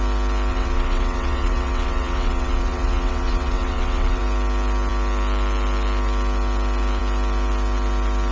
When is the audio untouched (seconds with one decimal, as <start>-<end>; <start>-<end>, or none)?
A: 0.0-0.5; 4.2-8.3